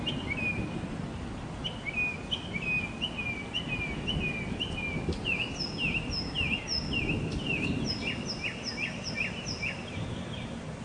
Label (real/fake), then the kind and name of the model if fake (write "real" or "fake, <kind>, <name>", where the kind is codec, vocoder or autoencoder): real